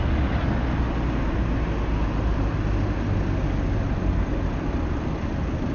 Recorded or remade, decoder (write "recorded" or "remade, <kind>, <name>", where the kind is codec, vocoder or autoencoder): recorded